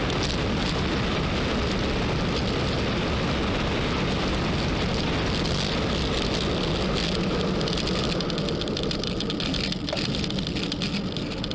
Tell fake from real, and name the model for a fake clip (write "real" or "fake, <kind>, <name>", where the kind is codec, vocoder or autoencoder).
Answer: real